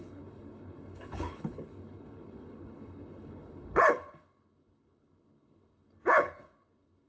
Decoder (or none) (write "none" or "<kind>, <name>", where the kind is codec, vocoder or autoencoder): codec, HILCodec